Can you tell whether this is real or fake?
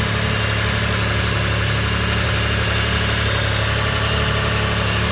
real